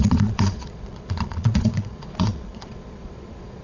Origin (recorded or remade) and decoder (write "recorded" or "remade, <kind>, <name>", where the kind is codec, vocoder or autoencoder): remade, vocoder, Vocos